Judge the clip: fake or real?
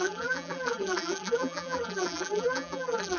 fake